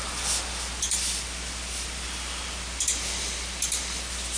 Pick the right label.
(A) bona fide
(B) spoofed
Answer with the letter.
B